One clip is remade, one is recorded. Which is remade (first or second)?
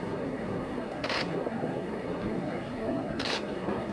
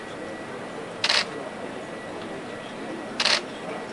first